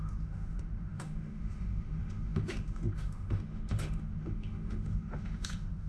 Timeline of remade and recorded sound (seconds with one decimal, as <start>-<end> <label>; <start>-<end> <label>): 0.0-5.9 remade